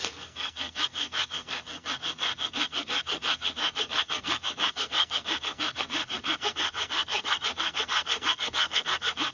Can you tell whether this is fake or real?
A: fake